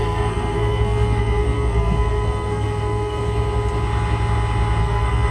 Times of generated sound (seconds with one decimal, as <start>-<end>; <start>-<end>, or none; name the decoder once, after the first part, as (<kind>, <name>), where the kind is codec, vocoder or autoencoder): 0.0-3.2 (codec, SNAC); 4.8-5.3